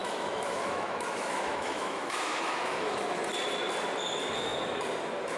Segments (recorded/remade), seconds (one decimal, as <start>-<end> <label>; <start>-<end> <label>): 0.0-3.2 remade; 3.2-5.4 recorded